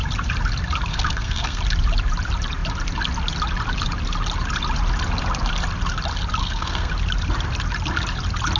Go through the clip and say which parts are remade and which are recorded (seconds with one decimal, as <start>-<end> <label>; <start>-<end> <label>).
0.0-0.9 recorded; 0.9-1.6 remade; 1.6-6.4 recorded; 6.4-6.9 remade; 6.9-8.6 recorded